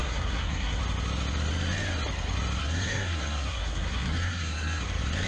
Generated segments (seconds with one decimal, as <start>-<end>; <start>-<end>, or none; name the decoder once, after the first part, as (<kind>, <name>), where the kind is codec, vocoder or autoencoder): 0.0-0.8 (codec, SNAC); 2.6-4.8